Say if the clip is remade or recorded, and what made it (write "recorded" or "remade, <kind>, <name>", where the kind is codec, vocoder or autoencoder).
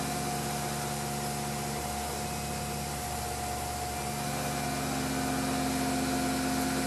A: recorded